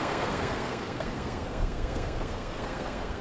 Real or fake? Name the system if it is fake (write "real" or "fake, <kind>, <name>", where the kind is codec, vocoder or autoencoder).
fake, codec, SNAC